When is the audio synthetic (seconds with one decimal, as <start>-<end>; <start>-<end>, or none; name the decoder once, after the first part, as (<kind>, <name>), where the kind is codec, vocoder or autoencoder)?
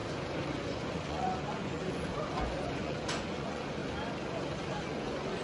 0.0-3.8 (vocoder, Vocos); 4.8-5.4